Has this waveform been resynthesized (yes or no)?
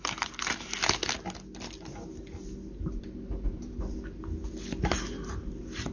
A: no